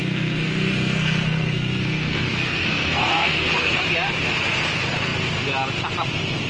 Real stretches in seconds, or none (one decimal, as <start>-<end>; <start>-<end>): 3.8-6.5